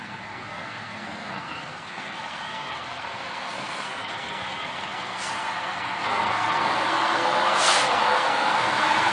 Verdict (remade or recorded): remade